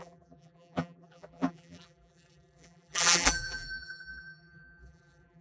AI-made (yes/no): yes